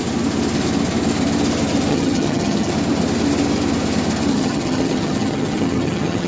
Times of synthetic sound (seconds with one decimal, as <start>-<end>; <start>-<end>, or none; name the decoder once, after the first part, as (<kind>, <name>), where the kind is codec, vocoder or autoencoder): 1.9-2.7 (vocoder, HiFi-GAN); 4.3-6.3